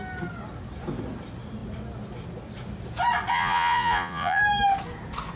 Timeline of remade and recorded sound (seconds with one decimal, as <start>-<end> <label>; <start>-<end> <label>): 0.0-3.3 recorded; 3.3-4.4 remade; 4.4-5.4 recorded